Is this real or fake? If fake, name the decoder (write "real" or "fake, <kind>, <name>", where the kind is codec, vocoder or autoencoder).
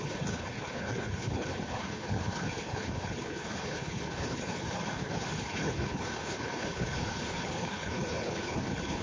fake, codec, HILCodec